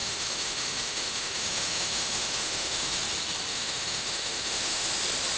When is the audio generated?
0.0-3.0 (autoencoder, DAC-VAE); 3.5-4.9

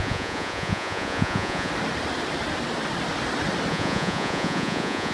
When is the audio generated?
0.0-1.7 (vocoder, Vocos); 3.7-5.1

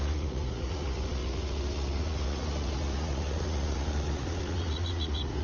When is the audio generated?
0.0-5.4 (vocoder, Vocos)